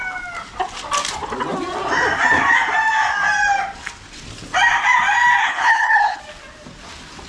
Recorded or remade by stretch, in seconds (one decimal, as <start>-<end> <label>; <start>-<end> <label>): 0.0-5.4 recorded; 5.4-6.2 remade; 6.2-7.3 recorded